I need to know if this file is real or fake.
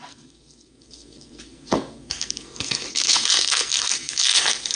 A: fake